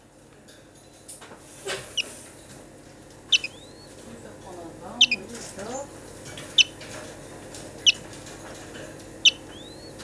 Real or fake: real